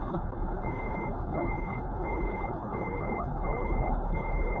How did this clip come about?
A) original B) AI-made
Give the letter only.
B